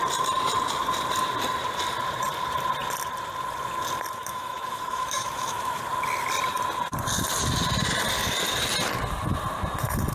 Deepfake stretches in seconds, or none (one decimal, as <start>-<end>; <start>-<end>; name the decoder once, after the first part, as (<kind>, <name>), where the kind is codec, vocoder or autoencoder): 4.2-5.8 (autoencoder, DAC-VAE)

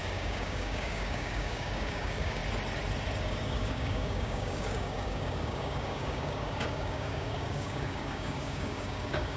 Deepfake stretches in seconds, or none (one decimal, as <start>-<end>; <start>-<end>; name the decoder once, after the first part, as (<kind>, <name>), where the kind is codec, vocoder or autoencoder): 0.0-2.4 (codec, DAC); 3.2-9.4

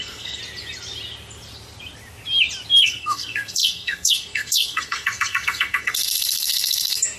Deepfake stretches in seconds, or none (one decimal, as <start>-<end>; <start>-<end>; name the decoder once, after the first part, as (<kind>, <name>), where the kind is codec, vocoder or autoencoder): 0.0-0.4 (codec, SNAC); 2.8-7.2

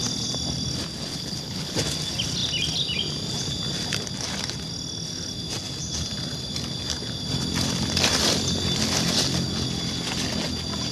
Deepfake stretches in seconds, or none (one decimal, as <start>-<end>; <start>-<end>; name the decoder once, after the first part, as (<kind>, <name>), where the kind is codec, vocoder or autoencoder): 1.1-1.8 (codec, HILCodec)